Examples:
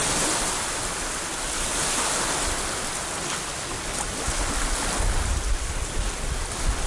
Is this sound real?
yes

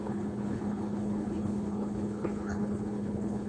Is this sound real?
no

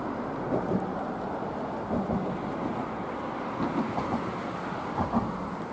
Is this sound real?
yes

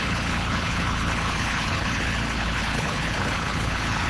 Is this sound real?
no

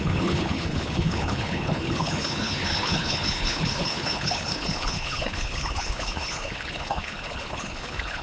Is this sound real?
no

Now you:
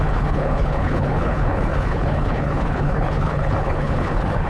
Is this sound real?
no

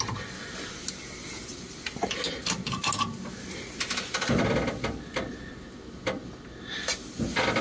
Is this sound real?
yes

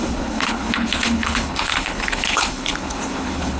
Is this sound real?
no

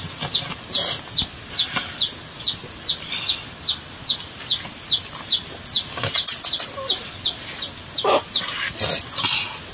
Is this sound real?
yes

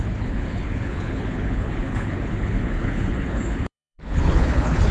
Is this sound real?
no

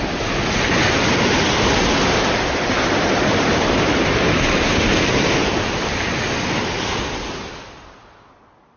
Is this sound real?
yes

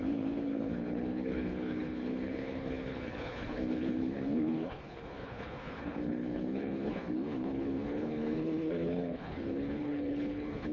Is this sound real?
no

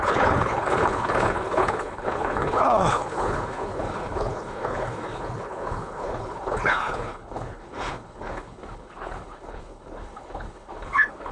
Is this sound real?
no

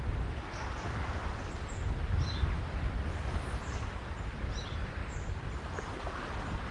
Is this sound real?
yes